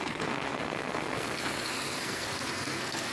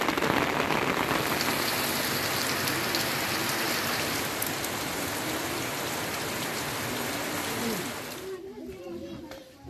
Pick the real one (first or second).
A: second